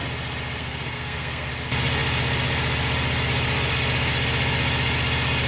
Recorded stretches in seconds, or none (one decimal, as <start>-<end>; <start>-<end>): 0.0-0.6; 1.5-5.5